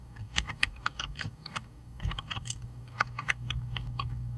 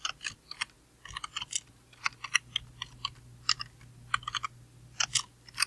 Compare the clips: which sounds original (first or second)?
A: second